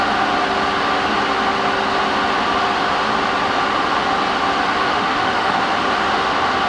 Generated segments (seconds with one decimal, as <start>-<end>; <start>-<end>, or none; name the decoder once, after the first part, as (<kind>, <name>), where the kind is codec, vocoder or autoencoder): 4.8-5.6 (autoencoder, DAC-VAE)